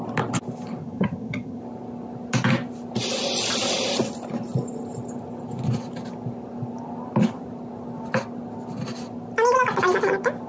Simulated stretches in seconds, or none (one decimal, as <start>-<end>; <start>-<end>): 0.8-1.6